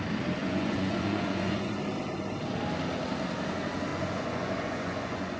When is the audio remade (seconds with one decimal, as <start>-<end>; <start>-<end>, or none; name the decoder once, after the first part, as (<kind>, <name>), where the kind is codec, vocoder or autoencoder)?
0.4-1.8 (vocoder, Vocos); 3.9-5.4